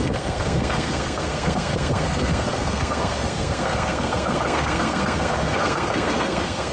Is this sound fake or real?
fake